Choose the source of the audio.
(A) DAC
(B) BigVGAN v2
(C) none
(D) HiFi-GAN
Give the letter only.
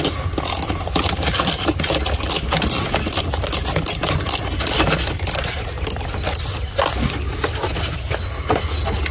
C